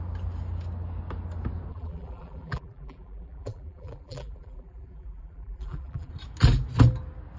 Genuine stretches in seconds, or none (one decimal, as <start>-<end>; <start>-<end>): 0.0-1.7; 6.1-7.4